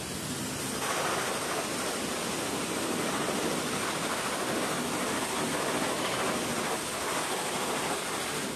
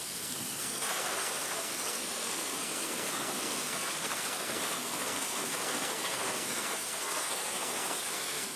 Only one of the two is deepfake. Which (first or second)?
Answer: second